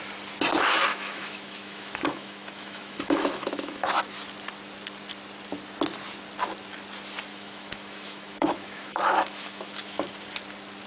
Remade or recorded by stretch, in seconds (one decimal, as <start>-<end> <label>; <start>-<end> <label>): 0.0-0.9 recorded; 0.9-3.9 remade; 3.9-7.3 recorded; 7.3-10.1 remade; 10.1-10.9 recorded